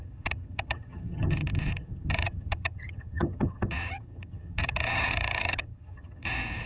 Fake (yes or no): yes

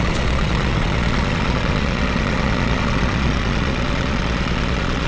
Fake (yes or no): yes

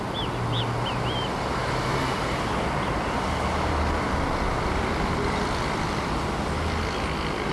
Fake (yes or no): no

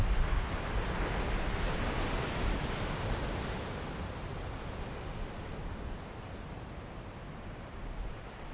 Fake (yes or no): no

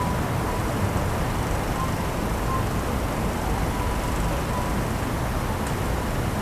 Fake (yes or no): no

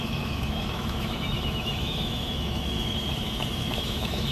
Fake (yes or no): yes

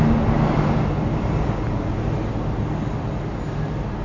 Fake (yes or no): no